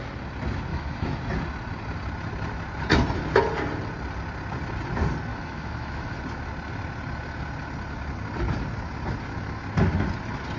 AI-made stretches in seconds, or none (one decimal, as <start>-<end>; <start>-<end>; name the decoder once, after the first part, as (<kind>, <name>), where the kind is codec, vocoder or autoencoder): 0.7-1.2 (autoencoder, DAC-VAE); 5.3-6.2

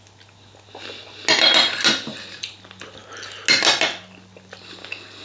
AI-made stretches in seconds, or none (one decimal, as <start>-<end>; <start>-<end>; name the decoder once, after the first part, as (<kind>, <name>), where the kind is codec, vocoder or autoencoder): none

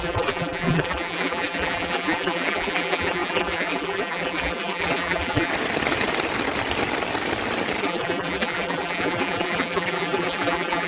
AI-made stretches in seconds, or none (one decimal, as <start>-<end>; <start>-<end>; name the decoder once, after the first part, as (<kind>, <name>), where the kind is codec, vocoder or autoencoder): 0.0-5.5 (vocoder, BigVGAN v2); 7.8-10.9

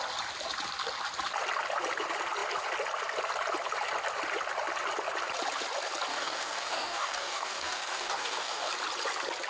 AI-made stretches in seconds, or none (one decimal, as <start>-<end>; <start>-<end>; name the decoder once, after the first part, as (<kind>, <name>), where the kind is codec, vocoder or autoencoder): 6.1-8.7 (codec, DAC)

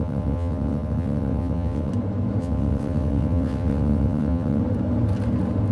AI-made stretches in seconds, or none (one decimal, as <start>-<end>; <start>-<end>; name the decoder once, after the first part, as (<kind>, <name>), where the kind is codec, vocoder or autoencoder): 0.0-1.9 (vocoder, WaveNeXt); 2.4-4.6